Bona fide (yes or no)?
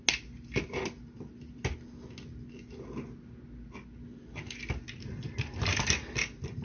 yes